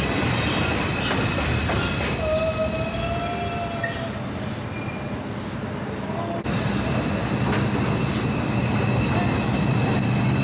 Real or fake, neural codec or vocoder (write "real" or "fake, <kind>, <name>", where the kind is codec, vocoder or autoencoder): real